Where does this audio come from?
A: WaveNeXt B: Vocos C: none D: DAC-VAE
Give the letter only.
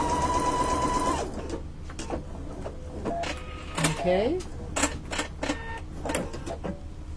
C